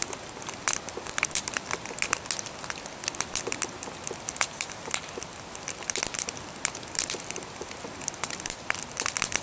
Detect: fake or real real